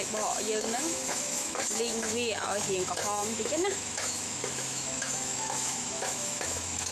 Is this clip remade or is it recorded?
remade